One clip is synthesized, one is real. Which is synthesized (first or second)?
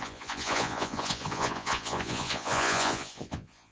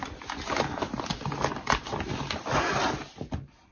first